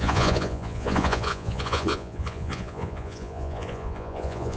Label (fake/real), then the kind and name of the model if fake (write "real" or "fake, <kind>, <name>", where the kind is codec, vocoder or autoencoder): fake, vocoder, Vocos